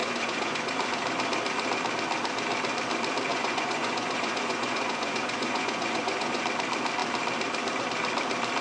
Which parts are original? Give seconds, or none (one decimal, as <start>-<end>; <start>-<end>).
0.7-3.3; 6.4-8.6